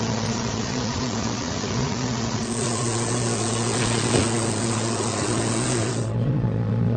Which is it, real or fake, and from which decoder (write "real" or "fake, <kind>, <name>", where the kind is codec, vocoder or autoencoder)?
fake, vocoder, Vocos